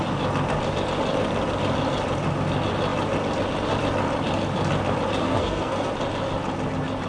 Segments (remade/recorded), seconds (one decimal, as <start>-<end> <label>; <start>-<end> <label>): 0.0-5.2 recorded; 5.2-5.9 remade; 5.9-7.1 recorded